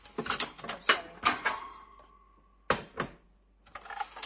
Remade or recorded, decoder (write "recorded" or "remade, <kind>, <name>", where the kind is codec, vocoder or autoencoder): recorded